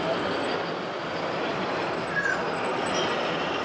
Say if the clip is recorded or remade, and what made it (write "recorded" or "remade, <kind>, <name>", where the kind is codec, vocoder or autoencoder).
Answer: recorded